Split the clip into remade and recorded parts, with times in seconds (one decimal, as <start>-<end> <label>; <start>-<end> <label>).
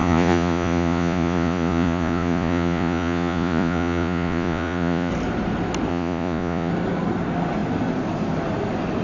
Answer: 0.0-5.1 remade; 5.1-5.9 recorded; 5.9-6.7 remade; 6.7-9.0 recorded